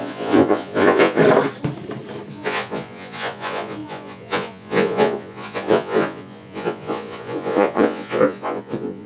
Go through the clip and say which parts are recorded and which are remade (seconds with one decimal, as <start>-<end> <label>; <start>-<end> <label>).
0.0-1.2 remade; 1.2-2.3 recorded; 2.3-9.1 remade